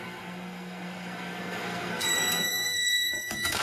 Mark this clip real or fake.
fake